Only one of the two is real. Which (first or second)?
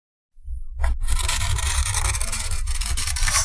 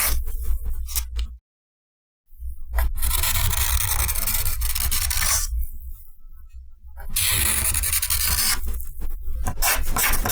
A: second